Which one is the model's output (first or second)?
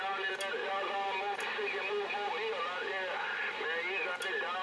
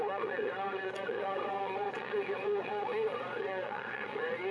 second